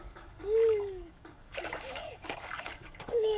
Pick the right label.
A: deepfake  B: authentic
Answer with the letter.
A